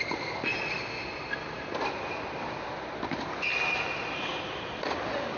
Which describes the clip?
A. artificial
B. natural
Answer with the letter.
B